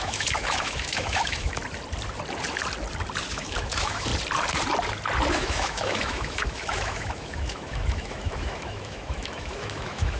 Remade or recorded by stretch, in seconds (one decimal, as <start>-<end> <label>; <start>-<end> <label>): 0.0-1.6 remade; 1.6-3.3 recorded; 3.3-4.1 remade; 4.1-5.3 recorded; 5.3-10.2 remade